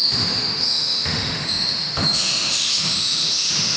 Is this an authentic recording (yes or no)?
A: no